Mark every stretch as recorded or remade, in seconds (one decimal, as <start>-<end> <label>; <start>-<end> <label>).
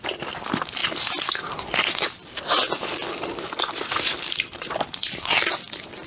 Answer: 0.0-6.1 recorded